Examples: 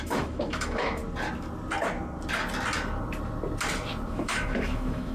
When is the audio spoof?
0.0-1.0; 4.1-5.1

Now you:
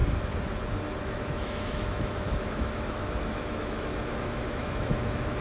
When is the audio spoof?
1.0-5.4

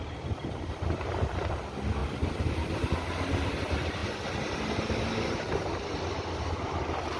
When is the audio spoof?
none

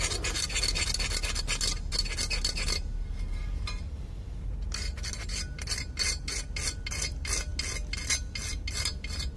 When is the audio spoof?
none

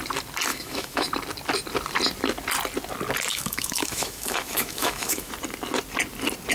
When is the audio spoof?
0.5-1.1; 3.3-5.3